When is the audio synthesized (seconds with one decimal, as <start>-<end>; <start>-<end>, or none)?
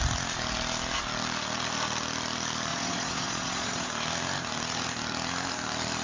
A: 2.7-3.9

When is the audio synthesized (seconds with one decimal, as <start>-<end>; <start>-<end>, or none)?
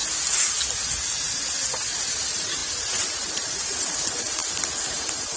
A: 2.1-4.4; 4.9-5.4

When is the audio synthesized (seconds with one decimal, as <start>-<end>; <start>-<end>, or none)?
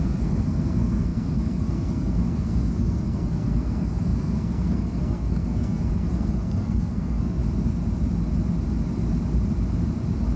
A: 0.0-7.4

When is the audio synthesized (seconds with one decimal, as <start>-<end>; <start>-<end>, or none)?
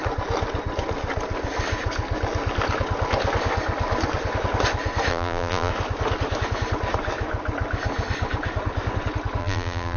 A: 5.1-5.7; 9.4-10.0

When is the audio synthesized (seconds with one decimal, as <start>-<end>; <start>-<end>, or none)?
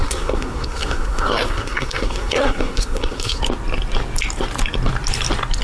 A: 0.0-3.4